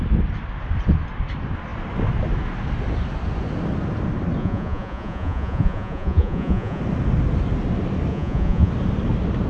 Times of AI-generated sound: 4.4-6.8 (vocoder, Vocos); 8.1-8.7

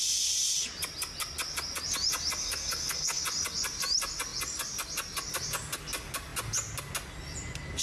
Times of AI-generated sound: 2.4-3.2 (codec, SNAC)

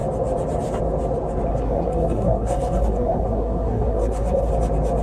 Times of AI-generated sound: 1.5-4.5 (codec, SNAC)

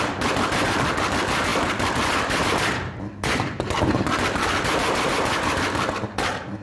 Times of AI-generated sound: none

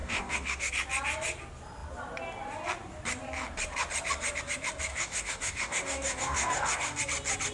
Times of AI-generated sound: 0.0-0.7 (codec, DAC); 4.9-7.0

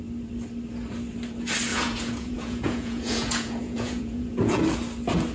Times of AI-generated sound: 1.7-4.6 (vocoder, Vocos)

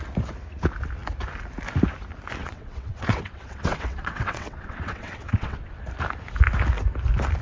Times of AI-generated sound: 2.4-5.8 (vocoder, WaveNeXt)